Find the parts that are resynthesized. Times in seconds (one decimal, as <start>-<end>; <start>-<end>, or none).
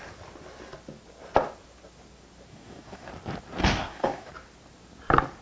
2.5-3.1; 3.6-4.3